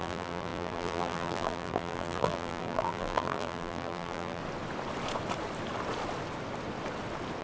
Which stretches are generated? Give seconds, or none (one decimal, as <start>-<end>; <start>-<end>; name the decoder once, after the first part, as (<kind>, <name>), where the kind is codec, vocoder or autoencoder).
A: 0.0-4.4 (vocoder, BigVGAN v2)